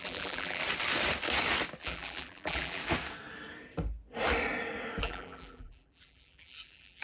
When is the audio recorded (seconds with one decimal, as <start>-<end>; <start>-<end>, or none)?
0.6-1.8; 2.8-5.0